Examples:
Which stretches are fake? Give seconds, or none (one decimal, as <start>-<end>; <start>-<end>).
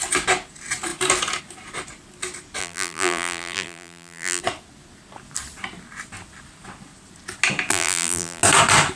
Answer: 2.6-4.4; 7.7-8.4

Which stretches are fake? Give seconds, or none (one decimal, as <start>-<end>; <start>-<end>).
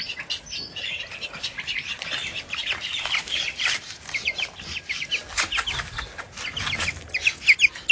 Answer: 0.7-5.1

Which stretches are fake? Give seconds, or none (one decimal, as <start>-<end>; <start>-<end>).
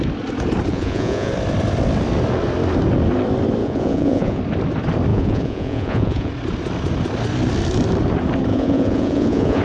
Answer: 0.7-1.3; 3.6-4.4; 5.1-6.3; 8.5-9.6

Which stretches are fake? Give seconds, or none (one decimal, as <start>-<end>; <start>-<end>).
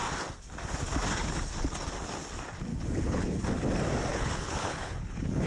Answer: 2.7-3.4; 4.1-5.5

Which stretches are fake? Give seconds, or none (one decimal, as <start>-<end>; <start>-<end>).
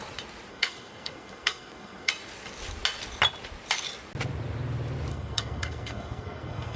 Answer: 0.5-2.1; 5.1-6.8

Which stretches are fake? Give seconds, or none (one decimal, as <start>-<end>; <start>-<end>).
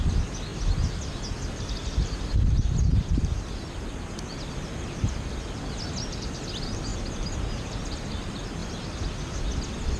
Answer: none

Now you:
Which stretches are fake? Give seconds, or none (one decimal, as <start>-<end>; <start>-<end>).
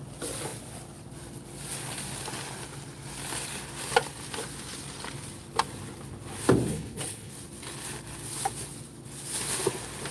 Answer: 6.7-7.3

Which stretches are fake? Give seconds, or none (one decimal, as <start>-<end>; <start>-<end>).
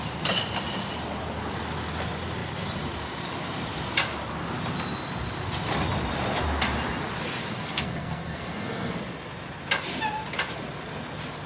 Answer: 7.4-8.9